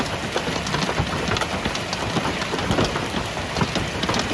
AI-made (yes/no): no